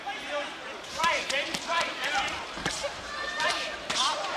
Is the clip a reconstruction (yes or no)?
yes